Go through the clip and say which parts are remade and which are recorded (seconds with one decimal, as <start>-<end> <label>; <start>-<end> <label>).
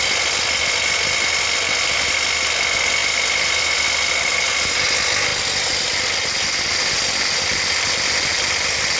0.0-5.3 recorded; 5.3-6.7 remade; 6.7-9.0 recorded